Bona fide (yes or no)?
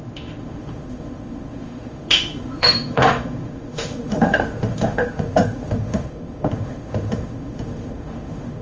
no